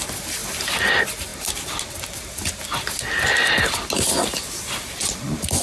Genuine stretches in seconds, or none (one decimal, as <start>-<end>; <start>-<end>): 0.0-5.6